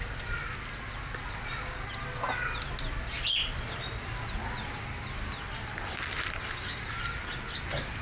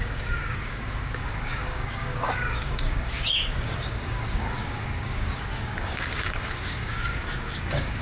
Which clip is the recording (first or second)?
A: first